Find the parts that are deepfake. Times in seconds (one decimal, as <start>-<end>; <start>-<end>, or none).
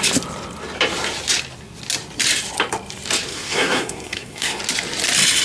3.3-4.6